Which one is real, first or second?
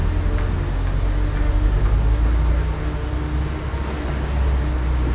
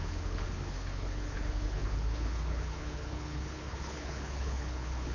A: first